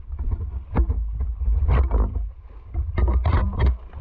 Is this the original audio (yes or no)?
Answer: yes